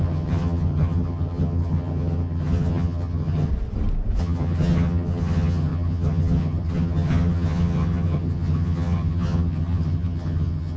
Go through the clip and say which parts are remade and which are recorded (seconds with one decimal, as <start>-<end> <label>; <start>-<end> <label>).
0.0-3.5 remade; 3.5-4.2 recorded; 4.2-10.8 remade